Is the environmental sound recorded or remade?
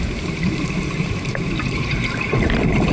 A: remade